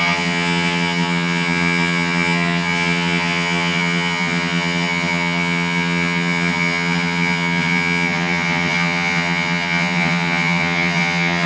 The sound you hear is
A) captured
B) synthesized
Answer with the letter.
B